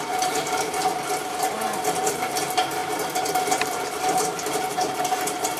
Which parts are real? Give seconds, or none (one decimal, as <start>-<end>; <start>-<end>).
0.9-1.4